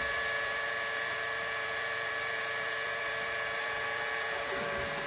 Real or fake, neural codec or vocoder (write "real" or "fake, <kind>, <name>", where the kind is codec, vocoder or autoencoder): fake, vocoder, BigVGAN v2